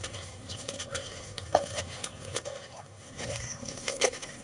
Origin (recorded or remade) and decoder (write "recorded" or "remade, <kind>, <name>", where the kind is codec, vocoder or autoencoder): remade, codec, SNAC